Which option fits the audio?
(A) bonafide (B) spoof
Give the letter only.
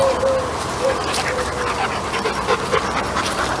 A